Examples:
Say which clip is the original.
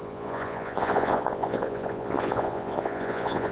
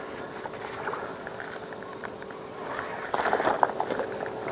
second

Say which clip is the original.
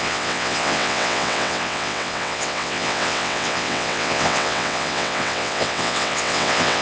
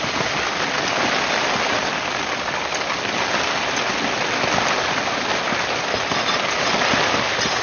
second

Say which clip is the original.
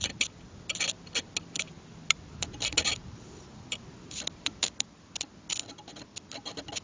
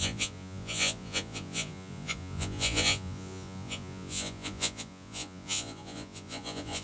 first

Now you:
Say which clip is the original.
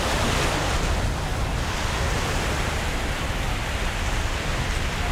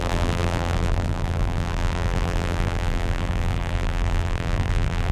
first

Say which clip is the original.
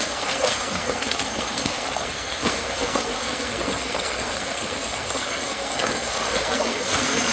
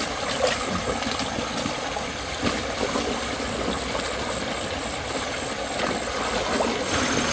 second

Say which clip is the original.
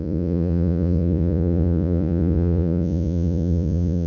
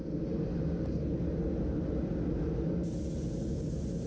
second